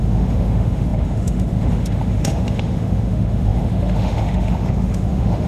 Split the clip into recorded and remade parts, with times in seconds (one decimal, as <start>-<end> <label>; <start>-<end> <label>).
0.0-5.5 remade